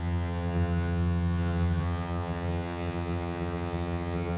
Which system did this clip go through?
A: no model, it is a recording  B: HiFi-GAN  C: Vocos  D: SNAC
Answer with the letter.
B